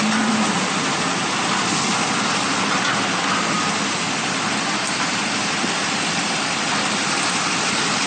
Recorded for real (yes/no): yes